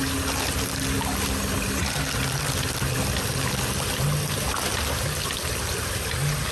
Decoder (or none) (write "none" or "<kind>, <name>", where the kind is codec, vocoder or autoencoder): none